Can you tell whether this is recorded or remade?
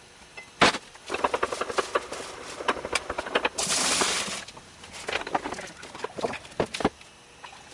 recorded